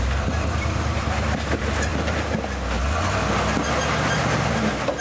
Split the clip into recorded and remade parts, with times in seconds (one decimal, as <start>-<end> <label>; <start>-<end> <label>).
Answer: 0.0-1.9 remade; 1.9-5.0 recorded